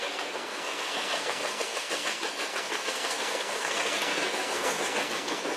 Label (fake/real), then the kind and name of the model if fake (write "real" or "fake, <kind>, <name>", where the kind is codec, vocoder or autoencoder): fake, codec, SNAC